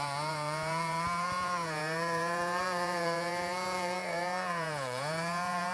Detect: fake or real fake